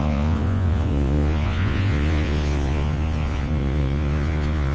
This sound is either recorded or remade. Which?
remade